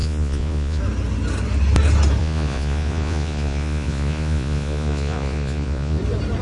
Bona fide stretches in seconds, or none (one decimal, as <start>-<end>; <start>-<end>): 0.8-2.2; 6.0-6.4